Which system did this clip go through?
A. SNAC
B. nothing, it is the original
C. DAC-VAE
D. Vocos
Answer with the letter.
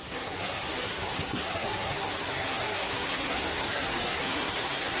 A